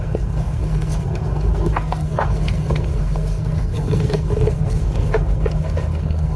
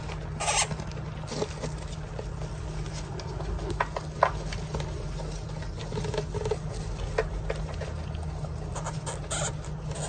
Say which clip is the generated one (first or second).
first